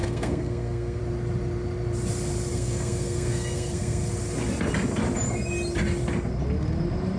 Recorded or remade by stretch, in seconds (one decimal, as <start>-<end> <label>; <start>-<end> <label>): 0.0-1.0 remade; 1.0-2.5 recorded; 2.5-4.1 remade; 4.1-7.2 recorded